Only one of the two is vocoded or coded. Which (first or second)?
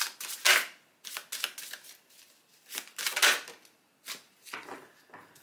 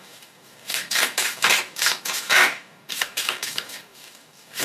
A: second